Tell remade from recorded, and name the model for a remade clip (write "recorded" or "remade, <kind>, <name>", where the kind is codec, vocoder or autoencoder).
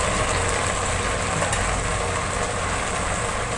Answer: recorded